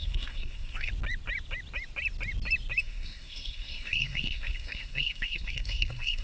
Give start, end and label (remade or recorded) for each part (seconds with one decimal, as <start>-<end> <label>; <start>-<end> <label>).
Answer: 0.0-0.9 remade; 0.9-2.8 recorded; 2.8-6.2 remade